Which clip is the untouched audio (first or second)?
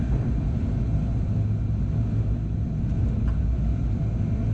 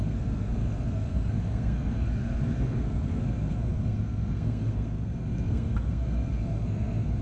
first